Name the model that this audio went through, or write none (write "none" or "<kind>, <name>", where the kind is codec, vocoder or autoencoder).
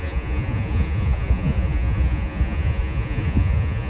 vocoder, Vocos